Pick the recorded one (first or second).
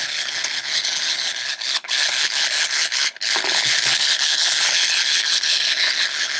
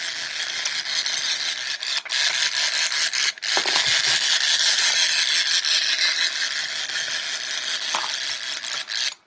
second